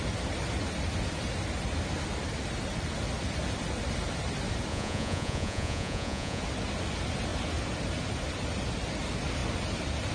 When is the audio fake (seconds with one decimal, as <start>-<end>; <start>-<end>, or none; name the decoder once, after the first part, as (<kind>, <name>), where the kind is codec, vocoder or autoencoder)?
4.7-6.4 (vocoder, Vocos)